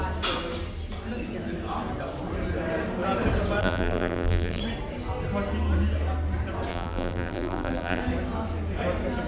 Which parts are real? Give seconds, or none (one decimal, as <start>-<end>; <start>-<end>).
0.0-3.6; 4.6-6.7; 8.0-9.3